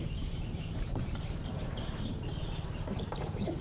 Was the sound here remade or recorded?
remade